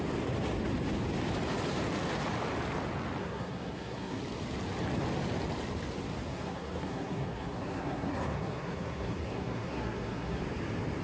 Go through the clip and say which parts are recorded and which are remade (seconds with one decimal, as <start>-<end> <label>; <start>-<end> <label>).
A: 0.0-3.2 recorded; 3.2-4.2 remade; 4.2-6.3 recorded; 6.3-10.4 remade; 10.4-11.0 recorded